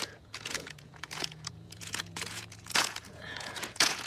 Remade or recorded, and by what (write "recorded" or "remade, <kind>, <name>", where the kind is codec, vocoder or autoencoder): remade, vocoder, Vocos